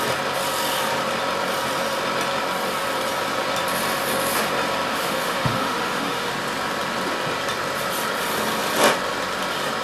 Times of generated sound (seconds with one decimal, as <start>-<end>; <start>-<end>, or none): 4.9-6.3